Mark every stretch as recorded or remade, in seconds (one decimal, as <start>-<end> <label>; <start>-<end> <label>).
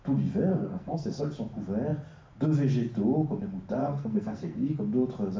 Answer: 0.0-0.5 recorded; 0.5-1.2 remade; 1.2-3.8 recorded; 3.8-4.7 remade; 4.7-5.4 recorded